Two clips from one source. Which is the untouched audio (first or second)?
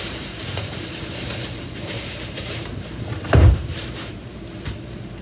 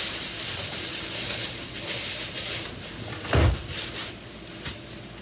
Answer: second